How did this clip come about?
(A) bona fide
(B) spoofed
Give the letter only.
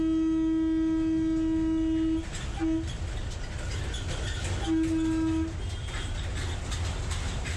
A